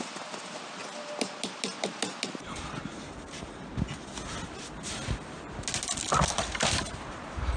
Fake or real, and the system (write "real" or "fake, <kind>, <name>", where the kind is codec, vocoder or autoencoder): real